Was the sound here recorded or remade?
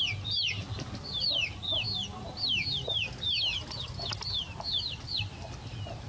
recorded